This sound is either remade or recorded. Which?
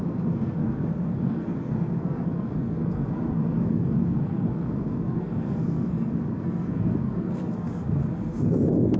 remade